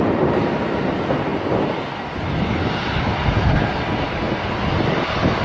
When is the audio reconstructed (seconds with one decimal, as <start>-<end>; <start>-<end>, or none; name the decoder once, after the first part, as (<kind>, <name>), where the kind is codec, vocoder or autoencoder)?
none